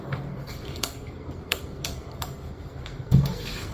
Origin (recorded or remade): remade